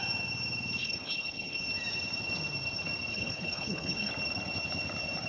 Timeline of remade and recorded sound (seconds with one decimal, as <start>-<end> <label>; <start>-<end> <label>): 0.0-0.8 recorded; 0.8-1.6 remade; 1.6-3.1 recorded; 3.1-4.1 remade; 4.1-5.3 recorded

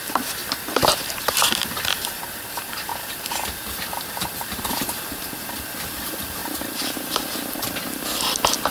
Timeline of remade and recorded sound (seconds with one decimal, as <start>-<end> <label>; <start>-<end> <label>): 0.0-0.4 remade; 0.4-1.1 recorded; 1.1-6.4 remade; 6.4-8.7 recorded

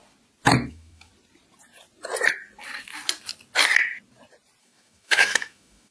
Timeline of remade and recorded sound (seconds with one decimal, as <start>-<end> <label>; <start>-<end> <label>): 0.0-0.7 recorded; 0.7-1.1 remade; 1.1-4.6 recorded; 4.6-5.9 remade

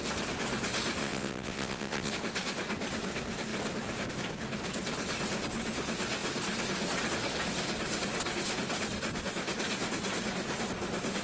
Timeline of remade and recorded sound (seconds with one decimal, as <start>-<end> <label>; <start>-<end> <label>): 0.0-1.0 recorded; 1.0-2.1 remade; 2.1-11.2 recorded

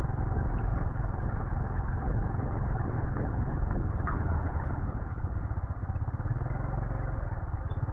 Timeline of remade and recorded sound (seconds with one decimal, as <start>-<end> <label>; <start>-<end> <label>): 0.0-0.7 recorded; 0.7-5.4 remade; 5.4-7.9 recorded

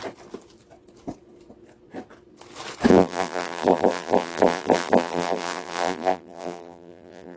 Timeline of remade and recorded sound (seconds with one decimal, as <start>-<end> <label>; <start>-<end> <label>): 0.0-2.9 recorded; 2.9-7.4 remade

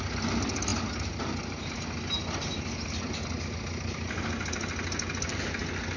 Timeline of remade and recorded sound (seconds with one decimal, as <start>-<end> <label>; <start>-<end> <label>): 0.0-6.0 recorded